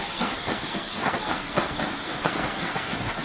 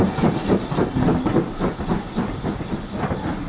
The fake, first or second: first